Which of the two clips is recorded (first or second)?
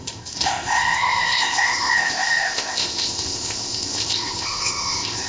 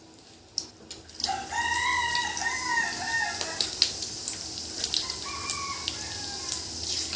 second